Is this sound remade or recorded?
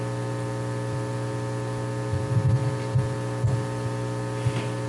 recorded